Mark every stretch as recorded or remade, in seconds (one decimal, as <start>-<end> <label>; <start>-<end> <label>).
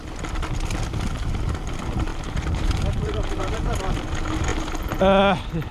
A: 0.0-2.1 recorded; 2.1-3.8 remade; 3.8-5.7 recorded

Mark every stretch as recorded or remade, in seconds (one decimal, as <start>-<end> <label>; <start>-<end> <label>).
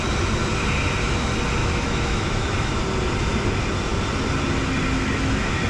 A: 0.0-1.6 recorded; 1.6-2.8 remade; 2.8-5.7 recorded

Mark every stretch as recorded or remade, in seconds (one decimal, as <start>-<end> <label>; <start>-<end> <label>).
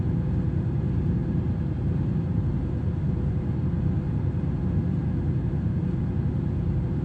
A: 0.0-7.0 remade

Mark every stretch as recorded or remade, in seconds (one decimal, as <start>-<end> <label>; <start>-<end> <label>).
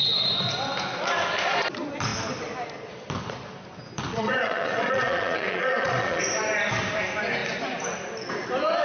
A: 0.0-4.1 recorded; 4.1-6.2 remade; 6.2-8.8 recorded